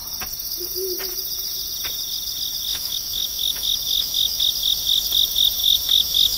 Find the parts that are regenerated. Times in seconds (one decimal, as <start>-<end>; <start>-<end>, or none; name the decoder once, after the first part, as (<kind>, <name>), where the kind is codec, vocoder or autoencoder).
2.7-4.4 (autoencoder, DAC-VAE); 5.6-6.4